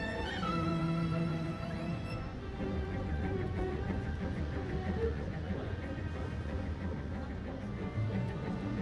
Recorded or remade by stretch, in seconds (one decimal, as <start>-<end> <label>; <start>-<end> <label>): 0.0-8.8 remade